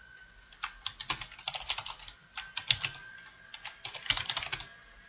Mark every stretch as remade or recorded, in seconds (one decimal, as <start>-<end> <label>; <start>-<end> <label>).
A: 0.0-5.1 recorded